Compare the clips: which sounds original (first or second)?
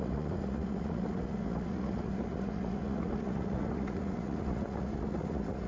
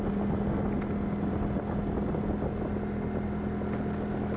second